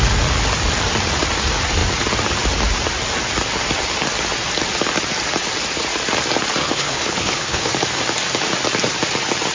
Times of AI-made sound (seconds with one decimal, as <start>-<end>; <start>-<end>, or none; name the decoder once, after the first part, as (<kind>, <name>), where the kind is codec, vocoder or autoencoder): 6.6-7.7 (codec, HILCodec)